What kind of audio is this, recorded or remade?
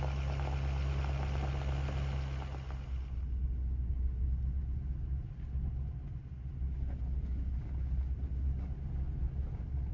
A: recorded